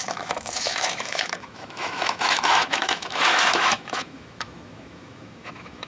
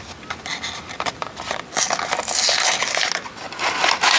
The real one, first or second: second